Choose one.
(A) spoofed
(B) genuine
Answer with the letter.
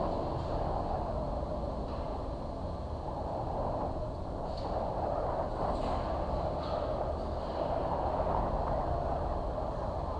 B